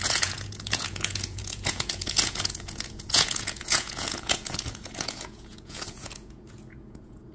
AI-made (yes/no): yes